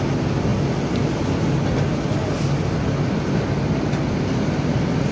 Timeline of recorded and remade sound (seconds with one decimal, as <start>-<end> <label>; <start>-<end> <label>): 0.0-5.1 recorded